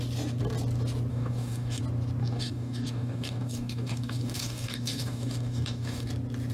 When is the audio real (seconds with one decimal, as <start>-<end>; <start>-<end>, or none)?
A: 0.0-1.1; 1.8-2.2; 6.1-6.5